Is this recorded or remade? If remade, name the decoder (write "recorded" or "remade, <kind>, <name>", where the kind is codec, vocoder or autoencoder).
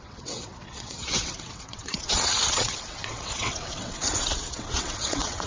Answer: remade, vocoder, WaveNeXt